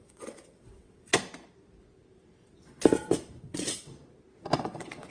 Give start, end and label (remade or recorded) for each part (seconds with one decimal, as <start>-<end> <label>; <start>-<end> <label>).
0.0-1.1 remade; 1.1-3.4 recorded; 3.4-3.9 remade; 3.9-4.6 recorded; 4.6-5.1 remade